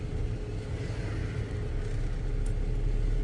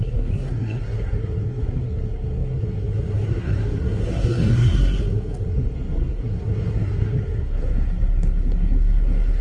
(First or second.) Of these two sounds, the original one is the first